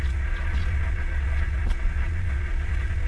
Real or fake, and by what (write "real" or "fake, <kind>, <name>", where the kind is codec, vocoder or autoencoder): fake, vocoder, Vocos